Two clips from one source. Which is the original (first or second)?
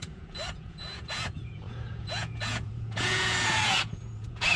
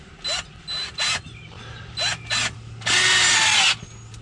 second